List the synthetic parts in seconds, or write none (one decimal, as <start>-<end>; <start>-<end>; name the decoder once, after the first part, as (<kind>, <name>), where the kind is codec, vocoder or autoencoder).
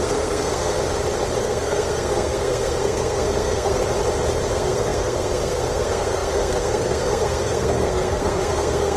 0.0-0.8 (codec, SNAC); 1.4-3.8; 4.5-9.0